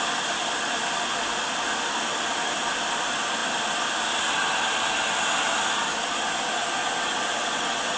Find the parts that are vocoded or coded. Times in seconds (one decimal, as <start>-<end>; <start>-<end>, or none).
0.0-6.8; 7.4-8.0